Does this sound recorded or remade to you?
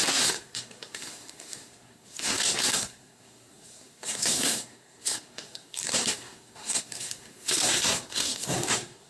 remade